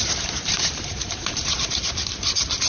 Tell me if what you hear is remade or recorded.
remade